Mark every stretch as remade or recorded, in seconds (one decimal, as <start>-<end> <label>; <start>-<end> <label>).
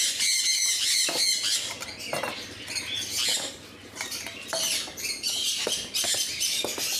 0.0-3.8 recorded; 3.8-6.6 remade; 6.6-7.0 recorded